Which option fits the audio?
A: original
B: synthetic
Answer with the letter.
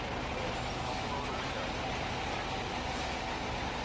A